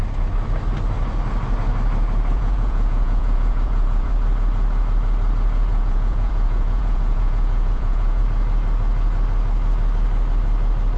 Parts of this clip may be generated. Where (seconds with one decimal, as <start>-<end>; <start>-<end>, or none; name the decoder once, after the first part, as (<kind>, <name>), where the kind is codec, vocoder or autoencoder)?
2.3-4.1 (vocoder, Vocos); 5.7-8.2